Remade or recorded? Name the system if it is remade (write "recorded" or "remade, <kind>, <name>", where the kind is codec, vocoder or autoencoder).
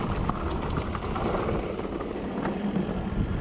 recorded